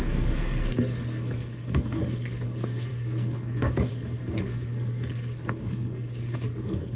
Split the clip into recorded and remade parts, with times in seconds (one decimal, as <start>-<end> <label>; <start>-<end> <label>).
0.0-7.0 remade